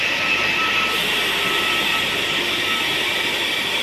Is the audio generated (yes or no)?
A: no